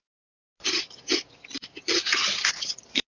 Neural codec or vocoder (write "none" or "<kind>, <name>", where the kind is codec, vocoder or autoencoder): none